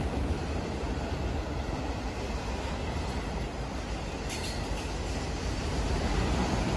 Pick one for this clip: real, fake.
real